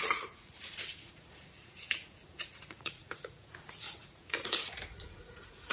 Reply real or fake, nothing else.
fake